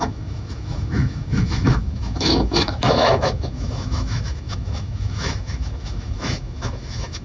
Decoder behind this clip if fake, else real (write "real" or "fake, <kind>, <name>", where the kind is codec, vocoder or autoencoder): fake, autoencoder, DAC-VAE